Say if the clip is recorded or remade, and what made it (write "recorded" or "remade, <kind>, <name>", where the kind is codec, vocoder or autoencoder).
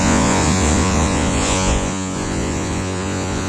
remade, vocoder, Vocos